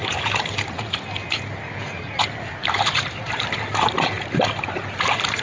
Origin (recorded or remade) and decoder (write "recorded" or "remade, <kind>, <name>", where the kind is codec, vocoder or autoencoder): remade, vocoder, BigVGAN v2